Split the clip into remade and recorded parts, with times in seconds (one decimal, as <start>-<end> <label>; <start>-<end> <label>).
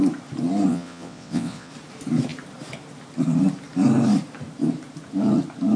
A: 0.0-0.7 recorded; 0.7-1.7 remade; 1.7-5.8 recorded